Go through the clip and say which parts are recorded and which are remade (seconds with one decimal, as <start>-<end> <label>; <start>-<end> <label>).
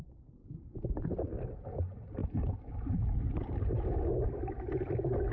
0.0-5.3 recorded